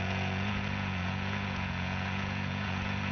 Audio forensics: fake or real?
fake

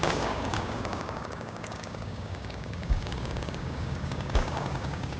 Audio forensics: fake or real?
fake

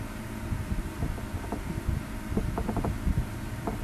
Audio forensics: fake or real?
fake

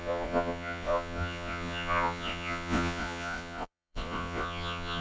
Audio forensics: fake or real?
fake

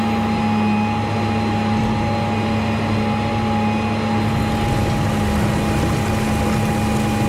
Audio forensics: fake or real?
real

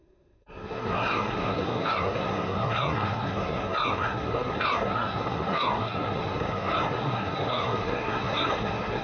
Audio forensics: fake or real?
fake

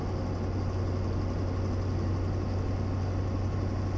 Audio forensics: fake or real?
real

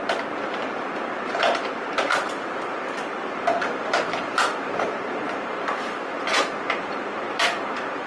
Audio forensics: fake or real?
fake